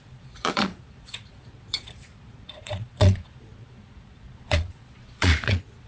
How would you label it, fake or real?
fake